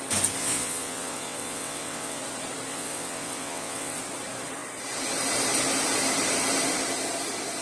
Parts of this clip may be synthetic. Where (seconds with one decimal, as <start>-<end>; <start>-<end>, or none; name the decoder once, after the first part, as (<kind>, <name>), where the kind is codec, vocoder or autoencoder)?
0.4-2.2 (vocoder, WaveNeXt); 2.7-4.0